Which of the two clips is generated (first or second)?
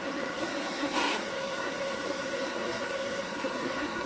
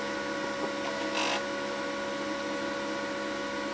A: first